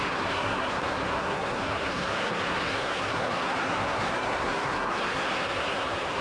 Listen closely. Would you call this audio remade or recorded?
remade